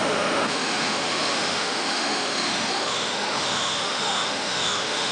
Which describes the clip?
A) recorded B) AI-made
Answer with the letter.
B